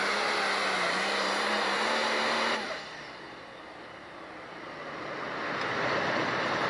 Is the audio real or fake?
real